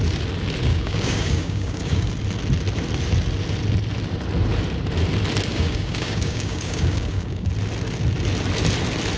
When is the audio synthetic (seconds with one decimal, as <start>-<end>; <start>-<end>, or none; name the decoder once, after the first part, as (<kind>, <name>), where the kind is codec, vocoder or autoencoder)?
0.7-2.1 (codec, DAC); 5.5-7.5

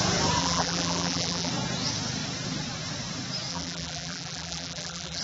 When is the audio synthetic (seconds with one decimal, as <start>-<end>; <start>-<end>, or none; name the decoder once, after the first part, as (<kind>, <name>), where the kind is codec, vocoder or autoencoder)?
0.4-1.5 (vocoder, BigVGAN v2); 3.5-5.2

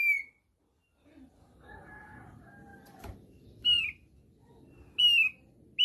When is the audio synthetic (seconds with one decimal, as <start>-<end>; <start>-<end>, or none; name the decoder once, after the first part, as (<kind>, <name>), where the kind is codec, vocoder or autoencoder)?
2.7-3.8 (vocoder, BigVGAN v2)

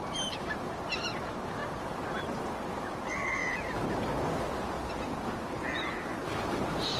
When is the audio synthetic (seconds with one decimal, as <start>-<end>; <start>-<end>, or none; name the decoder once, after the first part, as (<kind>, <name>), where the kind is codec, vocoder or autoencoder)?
0.0-0.7 (vocoder, BigVGAN v2)